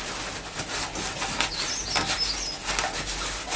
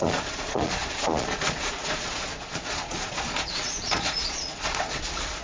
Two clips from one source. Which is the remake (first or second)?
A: second